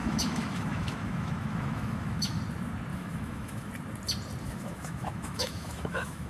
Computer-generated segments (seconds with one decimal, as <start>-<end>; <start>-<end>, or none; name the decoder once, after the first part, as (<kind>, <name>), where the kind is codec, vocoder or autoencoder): 0.0-2.4 (autoencoder, DAC-VAE); 2.9-3.7; 4.4-6.3